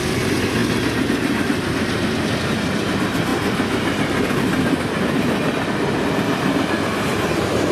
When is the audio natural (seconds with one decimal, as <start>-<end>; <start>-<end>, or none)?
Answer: 0.0-7.7